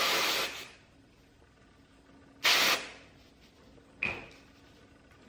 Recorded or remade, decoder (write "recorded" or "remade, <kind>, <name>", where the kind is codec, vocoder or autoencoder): recorded